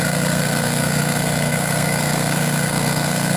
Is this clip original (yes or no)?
no